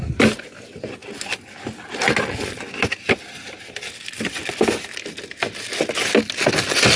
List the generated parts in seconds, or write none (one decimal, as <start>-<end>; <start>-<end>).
none